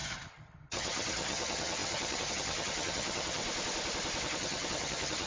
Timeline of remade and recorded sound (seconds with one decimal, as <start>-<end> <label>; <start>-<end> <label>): 0.0-3.4 remade; 3.4-4.2 recorded; 4.2-5.3 remade